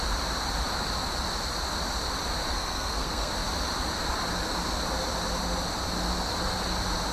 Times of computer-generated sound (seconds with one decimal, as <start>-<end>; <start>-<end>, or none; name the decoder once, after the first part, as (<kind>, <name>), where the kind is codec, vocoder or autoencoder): 2.5-3.3 (codec, SNAC)